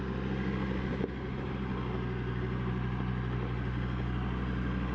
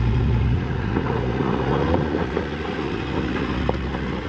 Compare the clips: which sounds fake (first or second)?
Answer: second